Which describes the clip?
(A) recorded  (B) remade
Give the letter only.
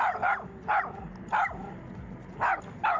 A